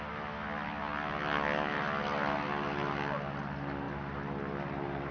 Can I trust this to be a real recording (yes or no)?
yes